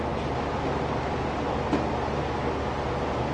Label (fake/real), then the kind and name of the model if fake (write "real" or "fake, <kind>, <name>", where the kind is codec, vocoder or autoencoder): real